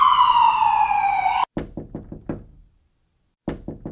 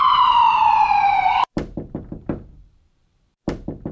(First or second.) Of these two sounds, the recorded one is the first